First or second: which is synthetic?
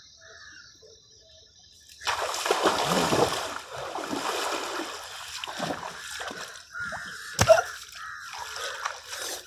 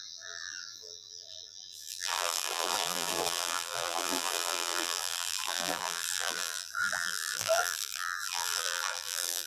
second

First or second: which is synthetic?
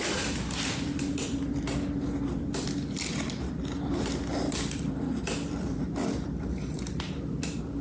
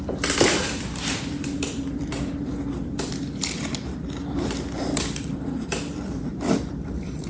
second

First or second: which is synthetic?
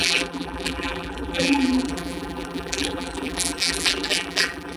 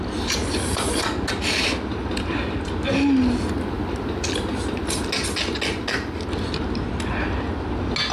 first